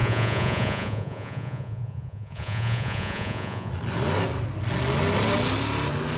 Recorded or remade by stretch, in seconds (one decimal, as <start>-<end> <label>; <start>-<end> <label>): 0.0-3.7 remade; 3.7-6.2 recorded